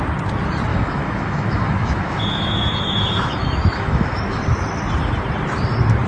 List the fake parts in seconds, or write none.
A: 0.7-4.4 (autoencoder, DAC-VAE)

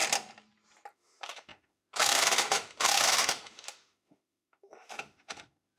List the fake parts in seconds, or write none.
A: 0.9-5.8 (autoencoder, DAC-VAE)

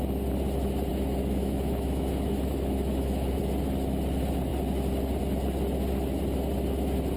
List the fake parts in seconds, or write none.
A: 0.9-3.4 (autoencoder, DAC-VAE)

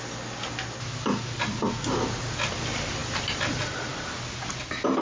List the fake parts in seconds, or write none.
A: none

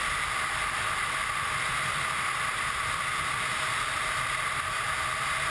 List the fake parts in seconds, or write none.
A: none

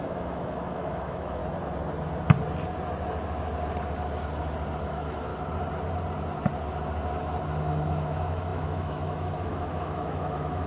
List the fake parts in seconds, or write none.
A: 0.0-1.4 (autoencoder, DAC-VAE); 4.8-5.3; 7.6-10.7

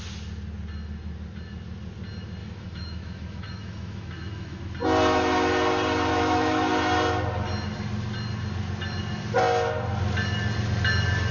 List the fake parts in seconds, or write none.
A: 2.4-4.6 (autoencoder, DAC-VAE); 6.1-6.7

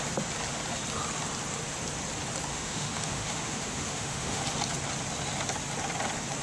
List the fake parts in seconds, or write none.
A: 2.5-4.4 (autoencoder, DAC-VAE)